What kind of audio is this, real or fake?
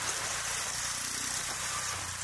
fake